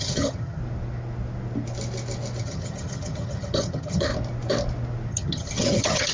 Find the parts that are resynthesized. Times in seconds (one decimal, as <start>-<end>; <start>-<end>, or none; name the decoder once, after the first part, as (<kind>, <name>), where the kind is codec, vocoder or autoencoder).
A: 0.0-0.6 (vocoder, HiFi-GAN); 2.4-4.1; 5.1-6.1